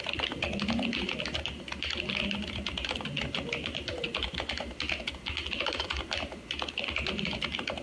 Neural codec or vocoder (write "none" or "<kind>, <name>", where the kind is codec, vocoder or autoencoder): none